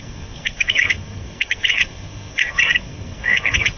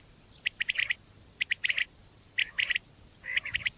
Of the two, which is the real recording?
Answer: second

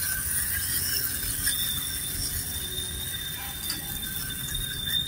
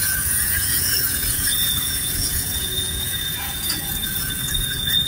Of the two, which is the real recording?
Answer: first